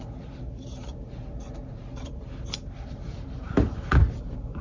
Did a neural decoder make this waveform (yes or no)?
yes